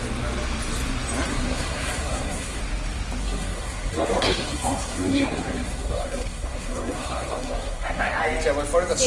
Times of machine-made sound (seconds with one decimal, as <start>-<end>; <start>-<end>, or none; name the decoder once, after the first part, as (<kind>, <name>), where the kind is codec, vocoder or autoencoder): 1.3-2.6 (codec, SNAC); 3.2-8.2